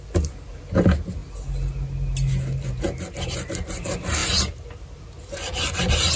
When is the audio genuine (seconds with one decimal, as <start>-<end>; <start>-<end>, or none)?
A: 0.0-6.2